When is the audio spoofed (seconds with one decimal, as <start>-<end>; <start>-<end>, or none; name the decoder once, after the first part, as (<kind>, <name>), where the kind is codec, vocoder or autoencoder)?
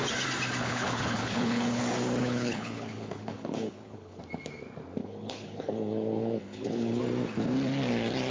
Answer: 0.6-1.8 (codec, HILCodec); 2.2-4.2; 5.0-7.0